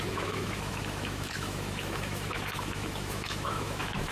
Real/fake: fake